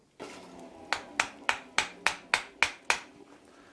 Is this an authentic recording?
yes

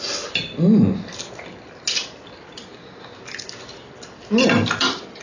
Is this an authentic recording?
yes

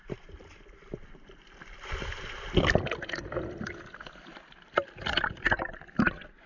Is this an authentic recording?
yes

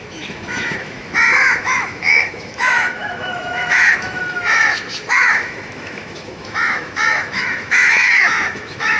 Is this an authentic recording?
no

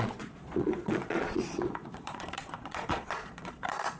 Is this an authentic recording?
no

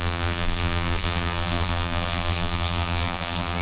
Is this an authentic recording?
no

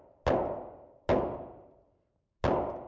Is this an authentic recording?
yes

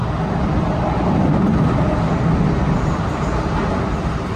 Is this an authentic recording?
yes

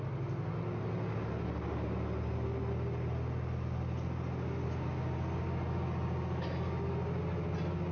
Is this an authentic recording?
yes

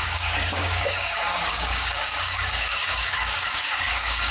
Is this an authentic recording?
no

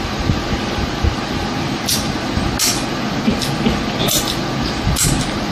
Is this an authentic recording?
yes